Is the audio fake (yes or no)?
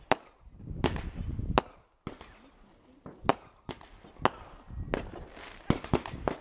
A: no